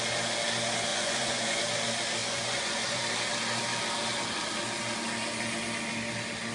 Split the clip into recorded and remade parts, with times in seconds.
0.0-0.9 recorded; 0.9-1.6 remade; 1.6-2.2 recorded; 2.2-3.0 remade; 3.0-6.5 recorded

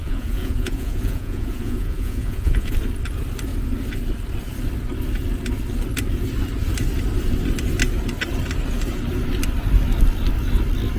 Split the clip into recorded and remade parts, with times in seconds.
0.0-2.7 remade; 2.7-11.0 recorded

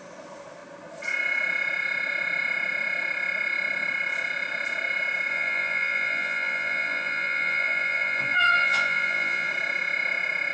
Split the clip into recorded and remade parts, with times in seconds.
0.0-5.3 recorded; 5.3-9.5 remade; 9.5-10.5 recorded

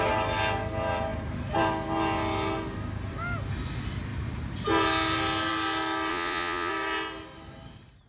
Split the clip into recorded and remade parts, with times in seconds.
0.0-6.1 recorded; 6.1-6.7 remade; 6.7-8.1 recorded

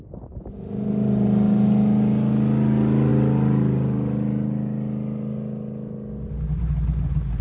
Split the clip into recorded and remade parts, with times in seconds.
0.0-7.4 recorded

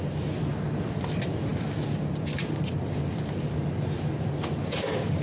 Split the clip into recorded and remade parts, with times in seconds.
0.0-5.2 recorded